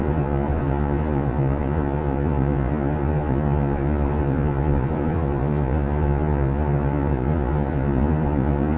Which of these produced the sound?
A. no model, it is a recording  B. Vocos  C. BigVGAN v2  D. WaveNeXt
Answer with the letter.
B